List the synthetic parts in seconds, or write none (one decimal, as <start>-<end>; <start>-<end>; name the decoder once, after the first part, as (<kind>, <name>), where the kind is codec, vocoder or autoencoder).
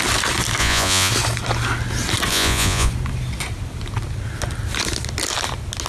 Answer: 0.6-1.1 (vocoder, Vocos); 2.3-2.9